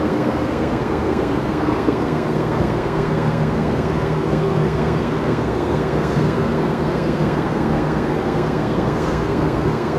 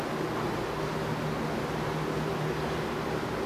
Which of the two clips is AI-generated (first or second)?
first